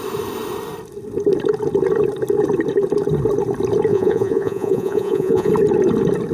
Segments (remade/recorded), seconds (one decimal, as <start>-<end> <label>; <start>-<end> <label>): 0.0-3.9 recorded; 3.9-5.5 remade; 5.5-6.3 recorded